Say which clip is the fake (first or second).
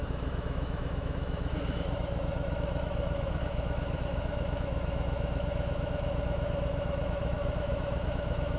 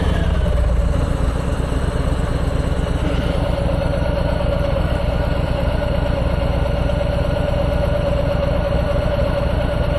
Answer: first